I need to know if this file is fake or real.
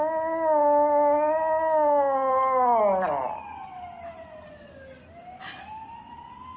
real